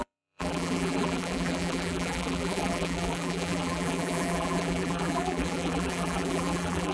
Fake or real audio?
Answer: fake